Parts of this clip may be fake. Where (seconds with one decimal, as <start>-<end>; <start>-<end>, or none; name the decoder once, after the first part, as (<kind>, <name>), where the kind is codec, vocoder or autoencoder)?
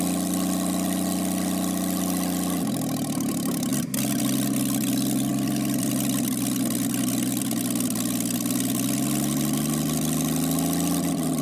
5.3-5.9 (vocoder, BigVGAN v2)